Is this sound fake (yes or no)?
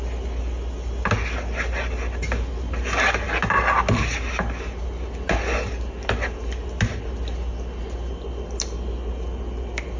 no